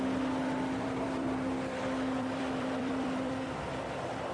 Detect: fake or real fake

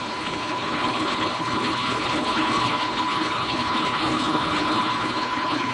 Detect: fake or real fake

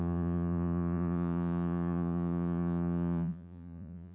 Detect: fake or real fake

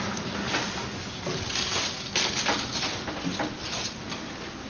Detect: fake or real real